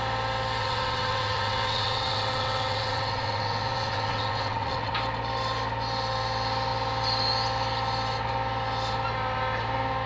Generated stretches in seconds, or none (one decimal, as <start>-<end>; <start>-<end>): 0.6-4.9